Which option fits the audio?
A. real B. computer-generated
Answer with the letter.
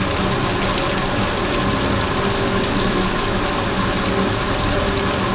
A